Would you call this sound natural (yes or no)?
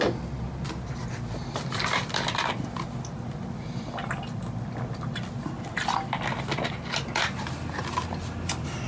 yes